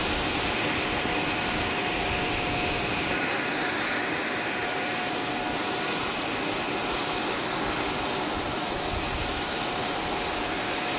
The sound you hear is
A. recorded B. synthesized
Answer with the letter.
A